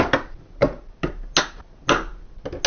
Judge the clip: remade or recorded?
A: recorded